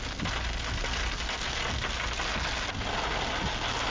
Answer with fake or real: real